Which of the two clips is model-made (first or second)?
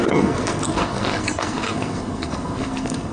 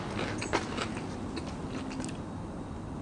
first